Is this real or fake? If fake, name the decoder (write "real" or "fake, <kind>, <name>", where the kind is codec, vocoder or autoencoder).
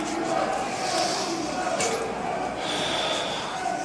real